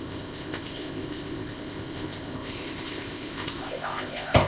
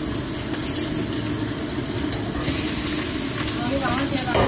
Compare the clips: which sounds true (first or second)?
second